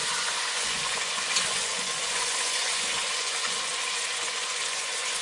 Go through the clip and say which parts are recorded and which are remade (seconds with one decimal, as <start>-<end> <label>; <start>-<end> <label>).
0.0-5.2 remade

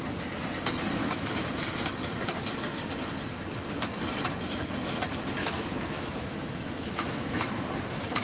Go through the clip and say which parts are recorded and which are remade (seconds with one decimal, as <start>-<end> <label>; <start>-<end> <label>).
0.0-1.0 recorded; 1.0-1.5 remade; 1.5-5.4 recorded; 5.4-7.5 remade; 7.5-8.2 recorded

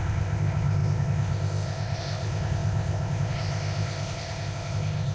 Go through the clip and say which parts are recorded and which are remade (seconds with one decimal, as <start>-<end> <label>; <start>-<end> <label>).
0.0-5.1 remade

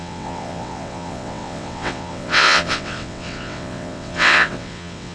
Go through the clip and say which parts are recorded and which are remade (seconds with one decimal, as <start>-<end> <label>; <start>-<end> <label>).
0.0-5.1 remade

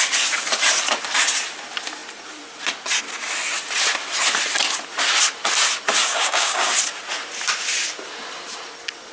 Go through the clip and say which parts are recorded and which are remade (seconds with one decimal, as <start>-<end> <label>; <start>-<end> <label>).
0.0-6.0 recorded; 6.0-6.7 remade; 6.7-9.1 recorded

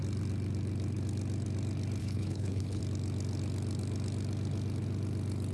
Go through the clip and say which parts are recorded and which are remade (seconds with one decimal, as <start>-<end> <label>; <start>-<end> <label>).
0.0-2.0 recorded; 2.0-2.8 remade; 2.8-5.5 recorded

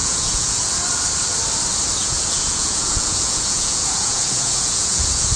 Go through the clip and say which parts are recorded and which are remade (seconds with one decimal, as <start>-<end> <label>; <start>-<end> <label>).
0.0-0.7 remade; 0.7-2.0 recorded; 2.0-5.4 remade